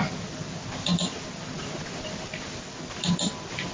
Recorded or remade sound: recorded